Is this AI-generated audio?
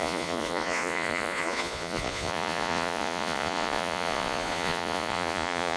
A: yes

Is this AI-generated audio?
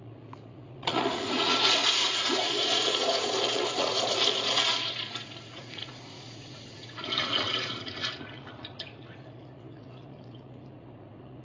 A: yes